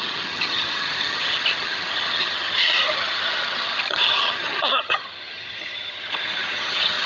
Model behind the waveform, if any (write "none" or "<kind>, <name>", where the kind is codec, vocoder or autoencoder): vocoder, HiFi-GAN